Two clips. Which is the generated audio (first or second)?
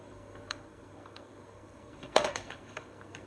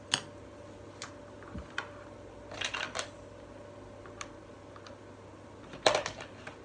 first